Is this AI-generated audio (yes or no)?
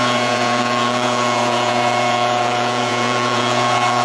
yes